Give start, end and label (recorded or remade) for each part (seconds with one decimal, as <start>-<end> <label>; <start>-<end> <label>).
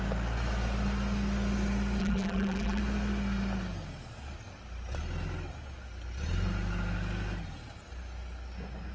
0.0-2.0 recorded; 2.0-2.8 remade; 2.8-8.9 recorded